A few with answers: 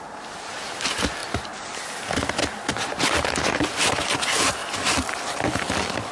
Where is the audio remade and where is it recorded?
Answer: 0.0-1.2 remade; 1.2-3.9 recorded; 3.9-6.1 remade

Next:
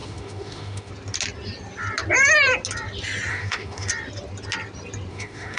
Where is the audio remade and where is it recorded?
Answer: 0.0-0.9 remade; 0.9-3.3 recorded; 3.3-3.9 remade; 3.9-5.1 recorded; 5.1-5.6 remade

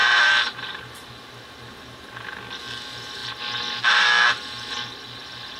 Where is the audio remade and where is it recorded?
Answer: 0.0-1.1 remade; 1.1-5.6 recorded

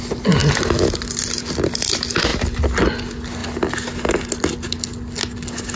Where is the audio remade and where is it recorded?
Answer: 0.0-5.8 recorded